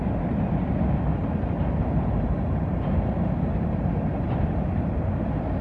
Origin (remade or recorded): recorded